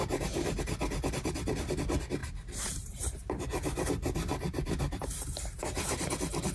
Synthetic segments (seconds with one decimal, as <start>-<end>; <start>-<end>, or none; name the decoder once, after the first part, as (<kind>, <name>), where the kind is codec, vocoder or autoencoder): 0.0-0.6 (vocoder, BigVGAN v2); 2.2-6.1